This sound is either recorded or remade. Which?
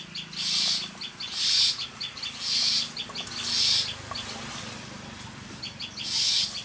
recorded